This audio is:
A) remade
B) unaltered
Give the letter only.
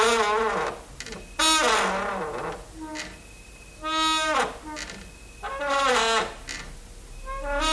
B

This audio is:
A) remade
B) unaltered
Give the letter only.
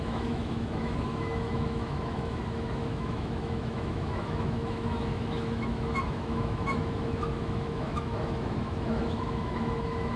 A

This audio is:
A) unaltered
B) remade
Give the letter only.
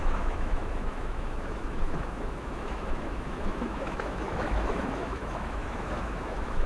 B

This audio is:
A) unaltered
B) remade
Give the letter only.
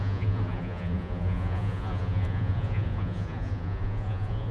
B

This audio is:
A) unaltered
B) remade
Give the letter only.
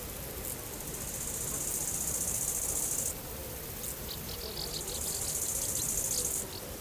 A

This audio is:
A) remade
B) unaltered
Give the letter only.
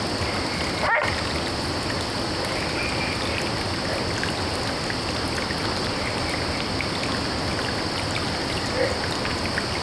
B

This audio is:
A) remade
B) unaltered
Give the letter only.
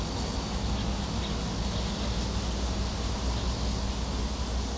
B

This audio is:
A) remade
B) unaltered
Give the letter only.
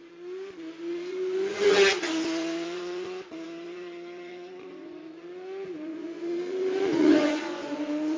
A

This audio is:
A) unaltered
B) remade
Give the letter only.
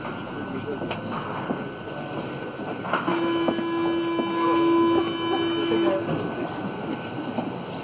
A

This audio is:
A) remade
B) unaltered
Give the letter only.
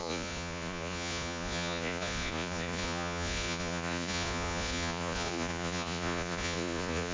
A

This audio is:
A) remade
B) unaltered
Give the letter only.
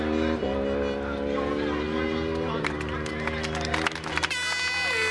B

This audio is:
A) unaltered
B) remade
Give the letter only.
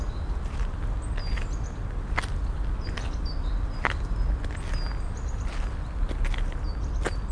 A